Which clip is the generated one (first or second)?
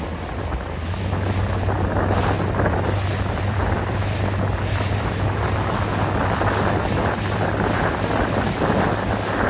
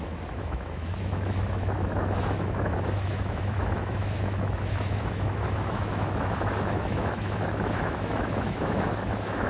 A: second